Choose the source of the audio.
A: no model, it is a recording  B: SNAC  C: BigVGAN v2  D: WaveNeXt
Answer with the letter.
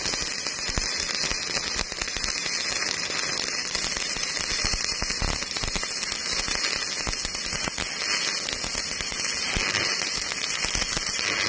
A